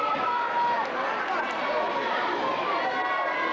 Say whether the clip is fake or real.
real